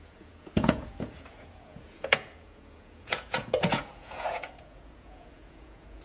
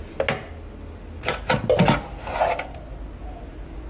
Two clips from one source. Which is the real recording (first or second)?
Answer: second